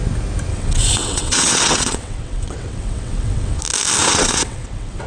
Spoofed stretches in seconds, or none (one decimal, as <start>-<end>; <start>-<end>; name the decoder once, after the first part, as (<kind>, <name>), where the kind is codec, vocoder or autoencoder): 0.5-3.6 (vocoder, WaveNeXt); 4.0-5.1